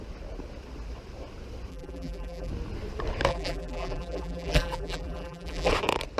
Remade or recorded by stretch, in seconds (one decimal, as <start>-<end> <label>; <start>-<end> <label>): 0.0-1.7 recorded; 1.7-2.5 remade; 2.5-3.3 recorded; 3.3-5.7 remade; 5.7-6.2 recorded